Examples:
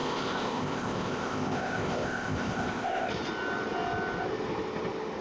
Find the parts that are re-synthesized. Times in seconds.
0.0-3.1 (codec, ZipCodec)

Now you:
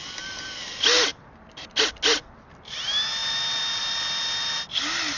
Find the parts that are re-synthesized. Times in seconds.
none

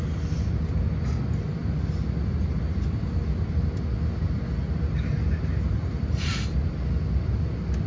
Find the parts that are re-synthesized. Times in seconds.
none

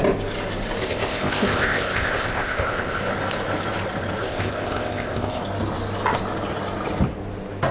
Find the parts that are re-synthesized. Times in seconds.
0.8-3.0 (codec, ZipCodec); 4.2-5.4

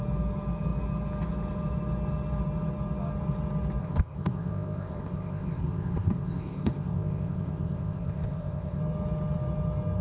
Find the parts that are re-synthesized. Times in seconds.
3.8-8.8 (codec, ZipCodec)

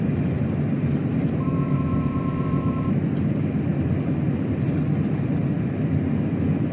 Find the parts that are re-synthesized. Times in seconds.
1.4-2.9 (codec, ZipCodec)

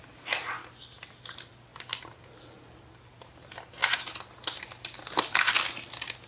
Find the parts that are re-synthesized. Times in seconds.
none

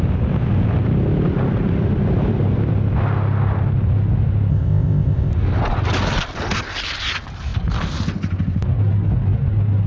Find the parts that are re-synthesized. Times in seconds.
4.5-5.3 (codec, ZipCodec)